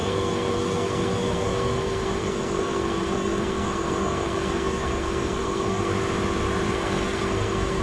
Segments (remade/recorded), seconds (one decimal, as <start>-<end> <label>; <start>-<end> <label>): 0.0-5.9 remade; 5.9-6.7 recorded; 6.7-7.8 remade